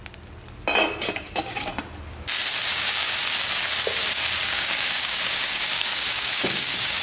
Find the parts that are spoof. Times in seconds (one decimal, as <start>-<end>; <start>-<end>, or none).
1.1-1.7; 2.7-3.2; 4.4-7.0